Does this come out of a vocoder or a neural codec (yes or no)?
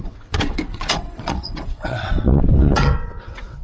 yes